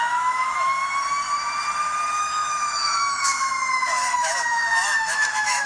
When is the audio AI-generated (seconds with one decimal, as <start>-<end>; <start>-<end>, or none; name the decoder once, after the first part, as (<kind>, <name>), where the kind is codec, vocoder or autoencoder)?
0.0-0.8 (autoencoder, DAC-VAE); 2.2-5.7